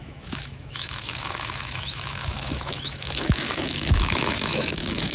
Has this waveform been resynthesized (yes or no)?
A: yes